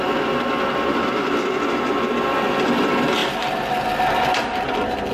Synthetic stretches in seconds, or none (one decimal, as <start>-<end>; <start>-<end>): none